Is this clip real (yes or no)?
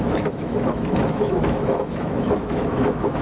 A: no